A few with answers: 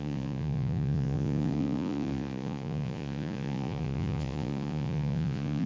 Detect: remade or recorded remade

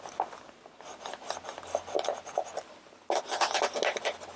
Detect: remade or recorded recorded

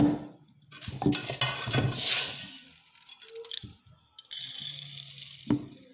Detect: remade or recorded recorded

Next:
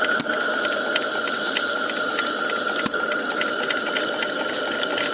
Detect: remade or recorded recorded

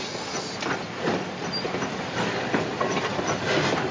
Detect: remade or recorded recorded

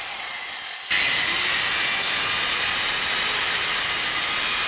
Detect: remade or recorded recorded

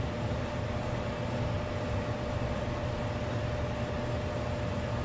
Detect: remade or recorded recorded